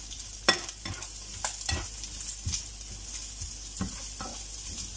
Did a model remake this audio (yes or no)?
no